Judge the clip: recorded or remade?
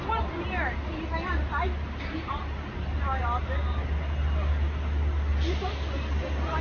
recorded